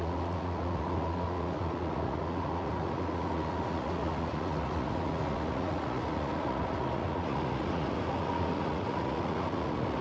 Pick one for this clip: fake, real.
fake